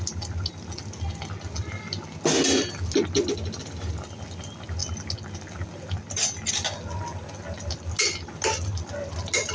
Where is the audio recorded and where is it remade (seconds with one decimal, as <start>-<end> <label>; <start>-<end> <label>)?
0.0-9.5 recorded